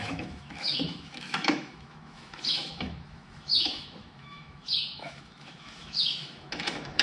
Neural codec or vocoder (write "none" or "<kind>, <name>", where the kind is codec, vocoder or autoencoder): autoencoder, DAC-VAE